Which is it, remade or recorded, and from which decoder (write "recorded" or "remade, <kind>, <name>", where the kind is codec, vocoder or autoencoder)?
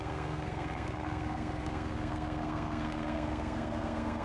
remade, codec, SNAC